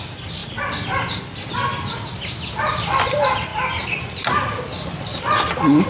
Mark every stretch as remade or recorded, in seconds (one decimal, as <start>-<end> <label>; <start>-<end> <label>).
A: 0.0-5.9 recorded